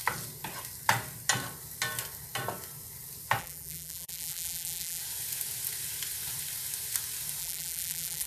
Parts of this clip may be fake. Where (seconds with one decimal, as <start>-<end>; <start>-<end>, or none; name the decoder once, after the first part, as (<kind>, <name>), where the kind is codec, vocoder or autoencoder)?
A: 3.4-5.0 (vocoder, BigVGAN v2); 7.4-8.3